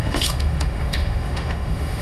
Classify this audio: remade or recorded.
remade